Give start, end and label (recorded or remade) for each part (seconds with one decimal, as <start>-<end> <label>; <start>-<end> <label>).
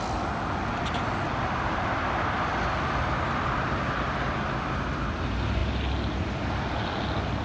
0.0-7.4 recorded